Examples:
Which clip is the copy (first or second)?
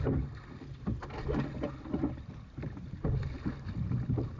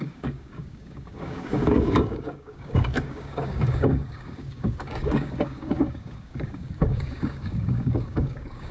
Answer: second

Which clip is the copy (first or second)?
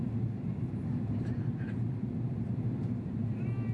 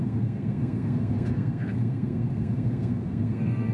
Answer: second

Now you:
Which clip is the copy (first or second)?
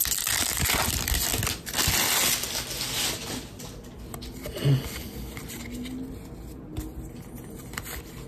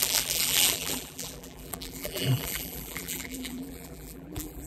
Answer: second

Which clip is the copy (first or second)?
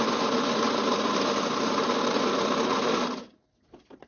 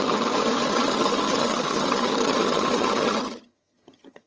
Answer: second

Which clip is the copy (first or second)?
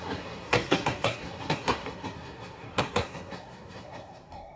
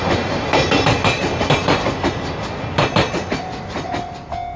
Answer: first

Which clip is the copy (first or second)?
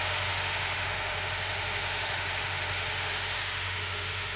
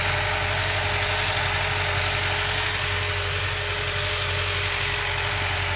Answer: first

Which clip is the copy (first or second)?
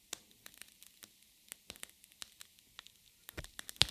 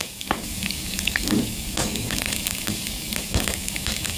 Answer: second